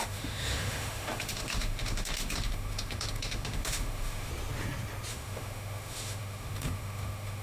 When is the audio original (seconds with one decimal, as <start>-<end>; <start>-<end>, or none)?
4.3-5.1

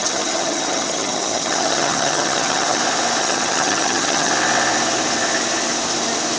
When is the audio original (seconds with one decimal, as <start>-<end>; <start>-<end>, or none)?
2.8-3.2; 4.3-6.4

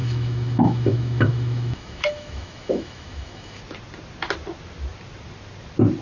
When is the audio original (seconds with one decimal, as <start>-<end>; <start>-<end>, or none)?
3.6-6.0

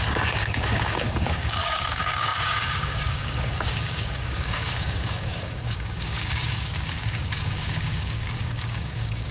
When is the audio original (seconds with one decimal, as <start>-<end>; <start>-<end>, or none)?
none